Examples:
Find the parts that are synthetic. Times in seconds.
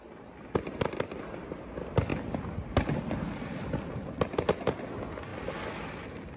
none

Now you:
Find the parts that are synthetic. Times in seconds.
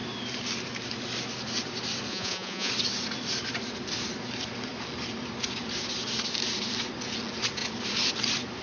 2.1-2.7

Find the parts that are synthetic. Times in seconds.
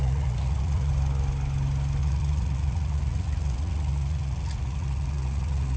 0.0-0.9; 2.0-5.8